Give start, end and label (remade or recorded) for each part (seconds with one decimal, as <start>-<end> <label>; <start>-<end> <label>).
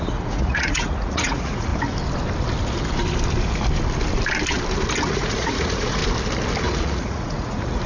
0.0-1.7 remade; 1.7-5.1 recorded; 5.1-6.0 remade; 6.0-6.6 recorded; 6.6-7.9 remade